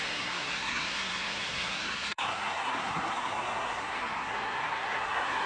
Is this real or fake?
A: fake